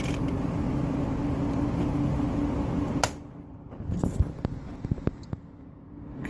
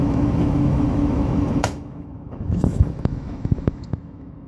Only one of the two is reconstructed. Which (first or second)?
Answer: second